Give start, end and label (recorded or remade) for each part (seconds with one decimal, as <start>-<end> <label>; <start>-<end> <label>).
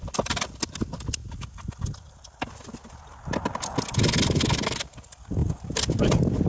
0.0-6.5 recorded